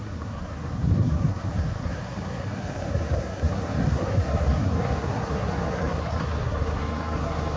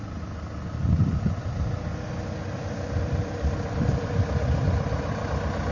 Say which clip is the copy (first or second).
first